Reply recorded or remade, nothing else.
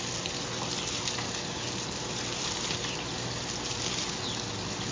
recorded